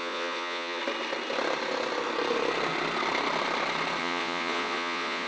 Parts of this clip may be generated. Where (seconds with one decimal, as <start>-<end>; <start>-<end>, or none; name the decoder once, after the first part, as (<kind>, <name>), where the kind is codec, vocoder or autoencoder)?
0.0-0.8 (vocoder, Vocos); 4.0-5.3